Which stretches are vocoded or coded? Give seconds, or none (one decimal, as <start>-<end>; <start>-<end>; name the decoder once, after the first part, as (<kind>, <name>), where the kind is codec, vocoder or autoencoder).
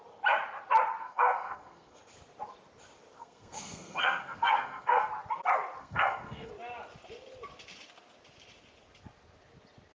1.0-2.0 (codec, SNAC); 3.2-5.1; 5.8-6.5